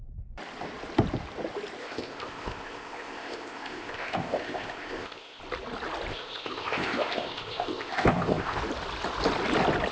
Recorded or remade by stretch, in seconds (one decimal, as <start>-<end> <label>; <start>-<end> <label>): 0.0-1.8 recorded; 1.8-5.4 remade; 5.4-6.1 recorded; 6.1-8.6 remade; 8.6-9.9 recorded